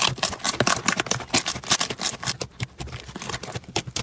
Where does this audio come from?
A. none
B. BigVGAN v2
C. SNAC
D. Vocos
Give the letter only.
A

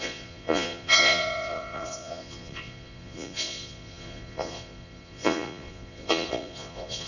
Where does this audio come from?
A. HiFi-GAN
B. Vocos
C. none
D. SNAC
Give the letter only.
B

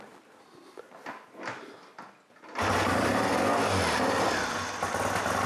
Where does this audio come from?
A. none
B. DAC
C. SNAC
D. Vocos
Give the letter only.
A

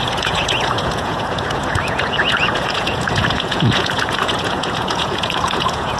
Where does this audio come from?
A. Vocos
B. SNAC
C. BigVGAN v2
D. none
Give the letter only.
A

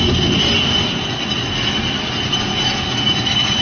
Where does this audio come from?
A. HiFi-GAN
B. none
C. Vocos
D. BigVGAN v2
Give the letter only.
B